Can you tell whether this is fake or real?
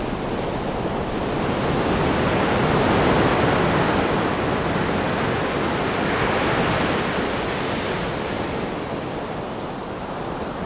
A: real